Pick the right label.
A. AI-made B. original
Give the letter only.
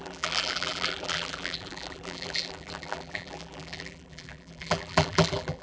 A